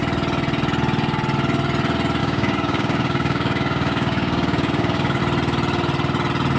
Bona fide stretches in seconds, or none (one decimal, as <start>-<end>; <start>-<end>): 0.0-2.2; 5.2-6.6